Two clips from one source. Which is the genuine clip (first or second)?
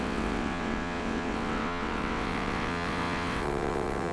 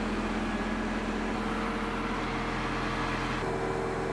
second